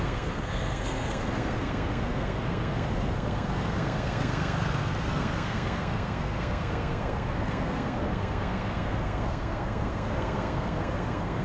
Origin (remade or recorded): remade